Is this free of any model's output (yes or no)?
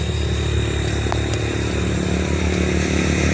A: yes